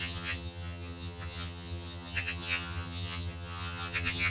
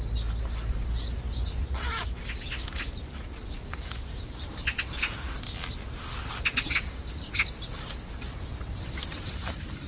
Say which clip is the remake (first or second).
first